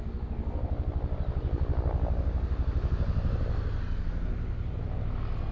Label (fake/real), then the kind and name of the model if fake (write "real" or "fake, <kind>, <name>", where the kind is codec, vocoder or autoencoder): real